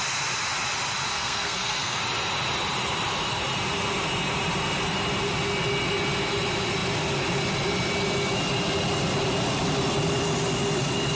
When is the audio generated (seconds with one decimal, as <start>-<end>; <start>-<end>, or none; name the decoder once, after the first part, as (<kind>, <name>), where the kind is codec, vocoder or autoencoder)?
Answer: 1.1-2.0 (codec, SNAC)